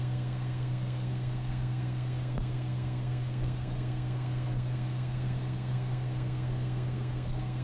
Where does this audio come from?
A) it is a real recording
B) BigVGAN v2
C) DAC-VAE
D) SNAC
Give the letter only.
D